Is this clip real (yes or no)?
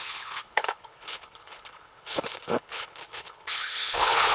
no